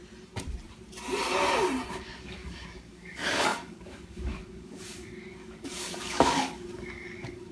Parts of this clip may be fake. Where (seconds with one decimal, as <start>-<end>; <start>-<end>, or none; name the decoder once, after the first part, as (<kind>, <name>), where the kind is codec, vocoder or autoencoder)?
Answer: 1.9-7.5 (codec, DAC)

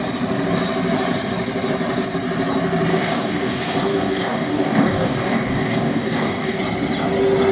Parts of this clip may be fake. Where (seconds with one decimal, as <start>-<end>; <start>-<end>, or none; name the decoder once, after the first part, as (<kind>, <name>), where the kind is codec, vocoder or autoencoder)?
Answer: 2.9-6.6 (codec, DAC)

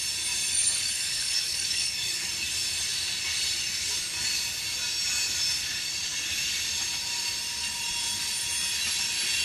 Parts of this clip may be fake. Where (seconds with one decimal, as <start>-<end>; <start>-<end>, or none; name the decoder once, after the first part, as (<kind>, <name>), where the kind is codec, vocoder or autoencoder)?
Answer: 0.5-2.3 (codec, DAC)